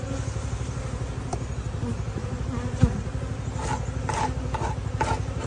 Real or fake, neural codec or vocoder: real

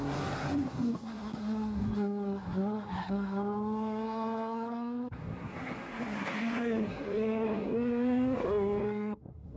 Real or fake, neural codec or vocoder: fake, codec, SNAC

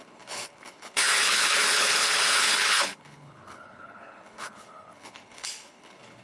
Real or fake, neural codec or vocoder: fake, codec, HILCodec